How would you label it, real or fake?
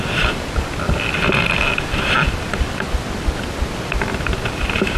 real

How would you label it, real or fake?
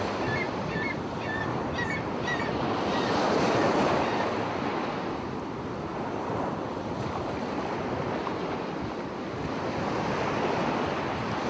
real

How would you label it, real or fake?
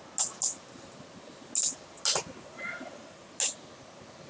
real